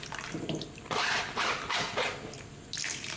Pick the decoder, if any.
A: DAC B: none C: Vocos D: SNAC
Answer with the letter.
B